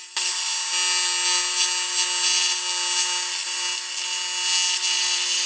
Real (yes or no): yes